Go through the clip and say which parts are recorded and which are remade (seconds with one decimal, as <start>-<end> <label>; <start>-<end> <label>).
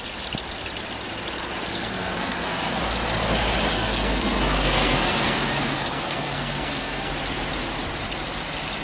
0.0-1.7 recorded; 1.7-2.8 remade; 2.8-3.7 recorded; 3.7-7.1 remade; 7.1-8.8 recorded